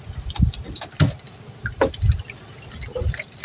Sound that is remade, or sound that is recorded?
recorded